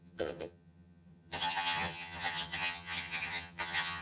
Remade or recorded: remade